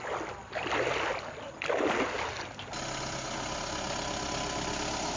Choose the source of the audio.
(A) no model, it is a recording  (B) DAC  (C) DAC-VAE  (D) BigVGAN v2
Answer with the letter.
A